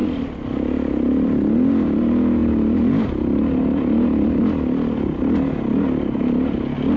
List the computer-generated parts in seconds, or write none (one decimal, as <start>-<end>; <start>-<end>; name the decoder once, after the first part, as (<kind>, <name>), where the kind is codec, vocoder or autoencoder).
none